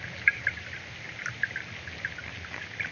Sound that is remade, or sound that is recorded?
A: recorded